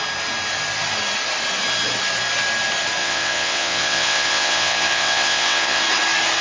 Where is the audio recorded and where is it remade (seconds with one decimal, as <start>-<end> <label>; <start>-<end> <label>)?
0.0-3.0 recorded; 3.0-5.8 remade; 5.8-6.4 recorded